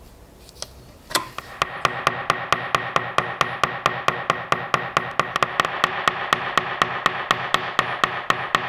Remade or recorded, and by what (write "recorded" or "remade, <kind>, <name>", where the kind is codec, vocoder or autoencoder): recorded